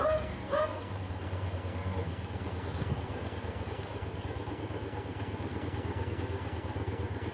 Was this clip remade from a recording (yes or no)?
yes